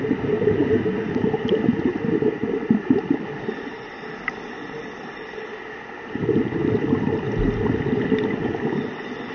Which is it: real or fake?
real